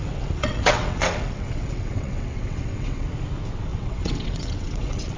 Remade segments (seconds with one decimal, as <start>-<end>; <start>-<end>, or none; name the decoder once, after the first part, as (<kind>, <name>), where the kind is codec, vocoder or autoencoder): 0.0-3.1 (vocoder, WaveNeXt); 3.7-5.2